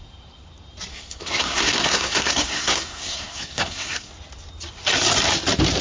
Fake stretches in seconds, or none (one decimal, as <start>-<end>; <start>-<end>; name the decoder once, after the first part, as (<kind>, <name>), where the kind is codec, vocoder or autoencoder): 0.9-4.1 (codec, SNAC)